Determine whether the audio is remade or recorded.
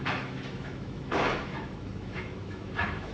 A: remade